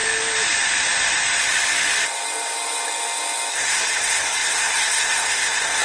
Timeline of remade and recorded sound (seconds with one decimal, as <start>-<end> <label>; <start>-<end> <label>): 0.0-3.5 recorded; 3.5-5.8 remade